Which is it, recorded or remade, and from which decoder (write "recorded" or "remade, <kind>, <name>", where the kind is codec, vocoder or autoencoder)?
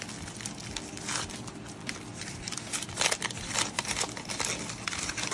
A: recorded